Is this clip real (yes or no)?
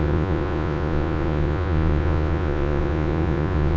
no